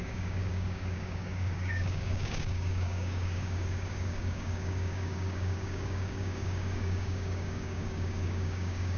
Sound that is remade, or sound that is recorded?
remade